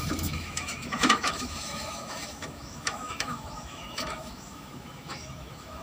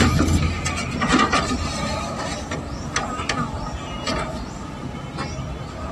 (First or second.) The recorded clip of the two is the second